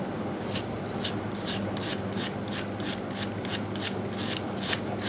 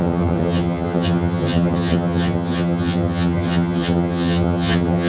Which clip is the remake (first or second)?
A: second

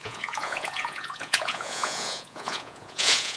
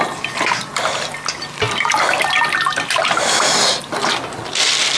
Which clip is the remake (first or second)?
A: first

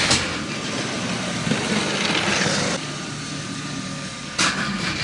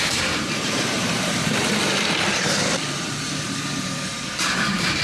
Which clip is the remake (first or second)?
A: second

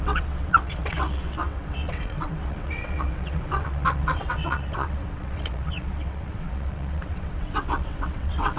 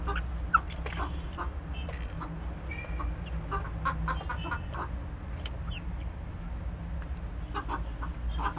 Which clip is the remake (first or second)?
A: first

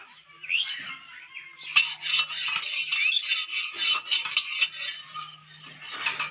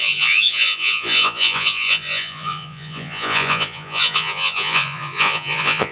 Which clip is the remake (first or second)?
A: second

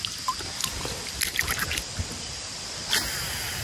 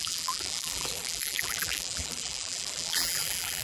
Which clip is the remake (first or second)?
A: second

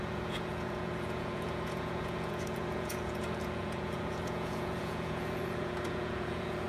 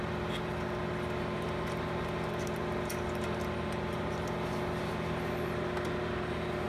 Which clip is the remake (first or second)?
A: first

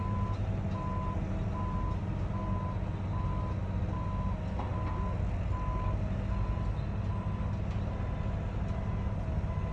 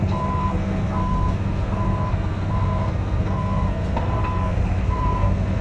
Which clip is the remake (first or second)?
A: second